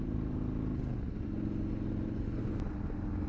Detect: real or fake real